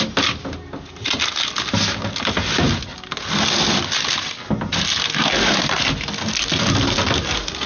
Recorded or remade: recorded